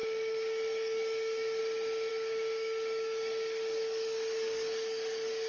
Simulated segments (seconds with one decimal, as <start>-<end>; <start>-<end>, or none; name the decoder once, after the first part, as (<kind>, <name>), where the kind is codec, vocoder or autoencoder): 0.0-1.6 (codec, DAC); 2.1-5.5